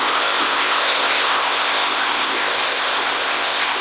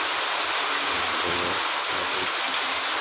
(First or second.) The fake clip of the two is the first